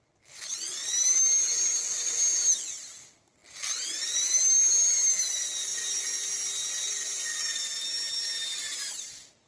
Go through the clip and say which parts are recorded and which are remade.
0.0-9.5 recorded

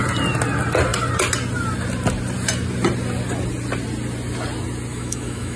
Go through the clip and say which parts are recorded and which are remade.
0.0-4.9 recorded; 4.9-5.6 remade

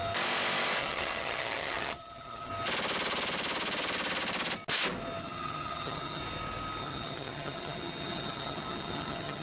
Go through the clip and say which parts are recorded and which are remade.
0.0-0.8 recorded; 0.8-2.5 remade; 2.5-5.2 recorded; 5.2-6.2 remade; 6.2-6.8 recorded; 6.8-9.4 remade

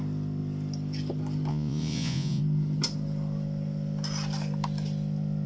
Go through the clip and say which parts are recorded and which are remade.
0.0-1.5 recorded; 1.5-2.4 remade; 2.4-5.5 recorded

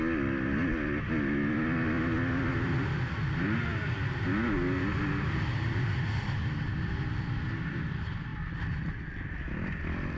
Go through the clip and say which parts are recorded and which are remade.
0.0-10.2 recorded

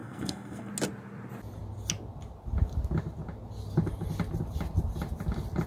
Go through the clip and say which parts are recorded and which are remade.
0.0-0.7 remade; 0.7-5.7 recorded

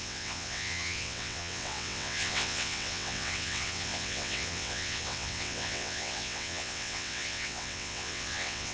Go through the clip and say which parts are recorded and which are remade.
0.0-8.7 remade